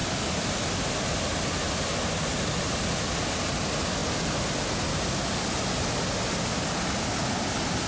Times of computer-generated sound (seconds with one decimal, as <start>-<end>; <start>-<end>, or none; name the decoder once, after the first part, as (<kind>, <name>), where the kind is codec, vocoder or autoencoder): 0.0-2.1 (vocoder, BigVGAN v2)

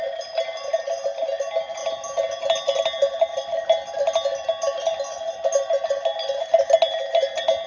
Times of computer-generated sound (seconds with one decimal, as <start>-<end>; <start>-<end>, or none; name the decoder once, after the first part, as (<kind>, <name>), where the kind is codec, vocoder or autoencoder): none

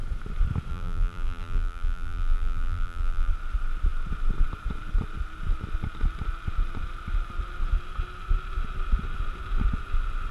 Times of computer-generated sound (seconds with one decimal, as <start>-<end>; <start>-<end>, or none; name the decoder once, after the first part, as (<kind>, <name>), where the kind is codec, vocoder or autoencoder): 0.7-3.3 (vocoder, BigVGAN v2)

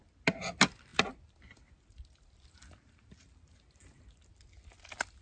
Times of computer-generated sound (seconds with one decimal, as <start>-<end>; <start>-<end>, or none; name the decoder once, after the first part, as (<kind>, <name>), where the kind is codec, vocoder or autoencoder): none